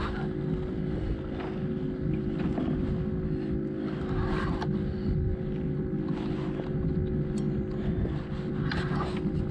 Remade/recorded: recorded